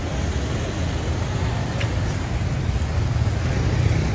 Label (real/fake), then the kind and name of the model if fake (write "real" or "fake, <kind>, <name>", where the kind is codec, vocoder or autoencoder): real